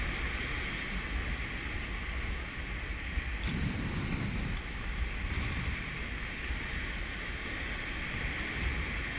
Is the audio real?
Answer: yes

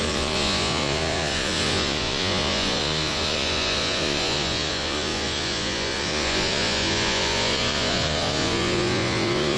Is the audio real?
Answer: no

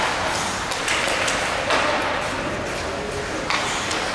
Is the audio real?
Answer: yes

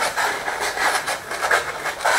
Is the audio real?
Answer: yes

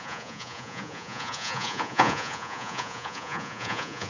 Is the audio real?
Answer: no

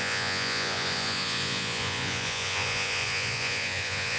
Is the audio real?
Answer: no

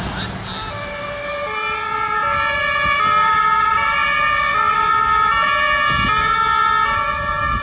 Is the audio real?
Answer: yes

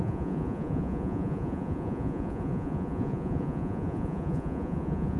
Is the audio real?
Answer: no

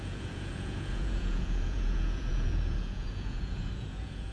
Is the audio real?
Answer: no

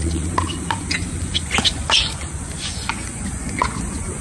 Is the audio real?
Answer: no